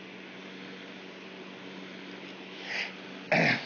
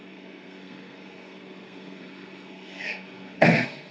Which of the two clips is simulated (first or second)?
second